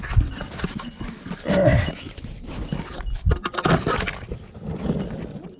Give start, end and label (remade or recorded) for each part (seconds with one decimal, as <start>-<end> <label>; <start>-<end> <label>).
0.0-5.6 recorded